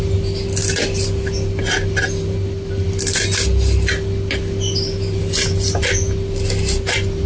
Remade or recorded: recorded